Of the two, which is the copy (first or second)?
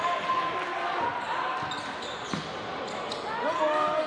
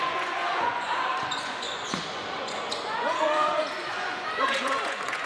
second